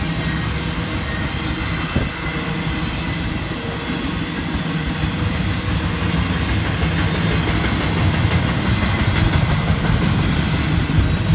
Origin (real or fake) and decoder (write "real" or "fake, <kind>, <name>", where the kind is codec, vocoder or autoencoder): real